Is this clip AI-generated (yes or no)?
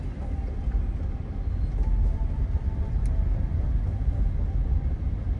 yes